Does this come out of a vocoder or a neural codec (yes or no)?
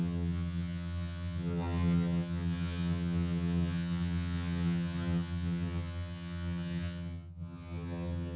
yes